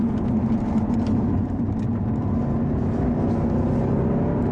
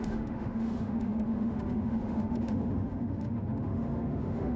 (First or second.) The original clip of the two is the first